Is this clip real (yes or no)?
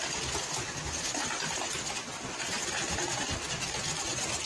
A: yes